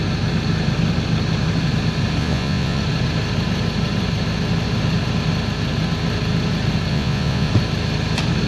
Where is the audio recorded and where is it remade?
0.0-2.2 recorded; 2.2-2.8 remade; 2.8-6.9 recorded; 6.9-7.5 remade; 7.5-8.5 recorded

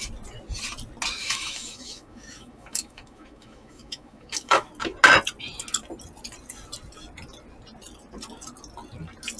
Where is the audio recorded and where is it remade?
0.0-1.2 recorded; 1.2-4.7 remade; 4.7-9.4 recorded

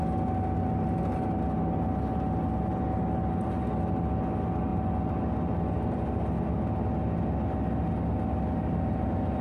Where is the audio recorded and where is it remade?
0.0-9.4 recorded

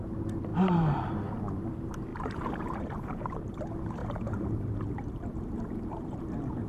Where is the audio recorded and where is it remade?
0.0-0.5 recorded; 0.5-1.4 remade; 1.4-2.1 recorded; 2.1-3.6 remade; 3.6-4.0 recorded; 4.0-6.7 remade

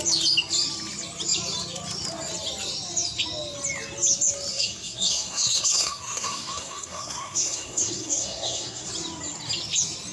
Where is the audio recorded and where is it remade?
0.0-4.5 recorded; 4.5-8.9 remade; 8.9-10.1 recorded